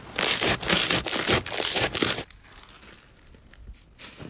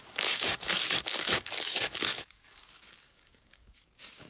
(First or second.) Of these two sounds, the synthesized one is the second